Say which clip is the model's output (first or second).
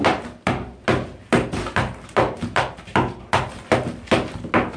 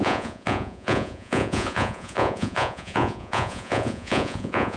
second